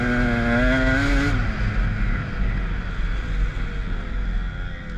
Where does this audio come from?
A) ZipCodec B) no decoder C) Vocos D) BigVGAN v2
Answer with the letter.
B